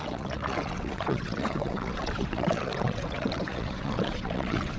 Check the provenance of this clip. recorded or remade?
remade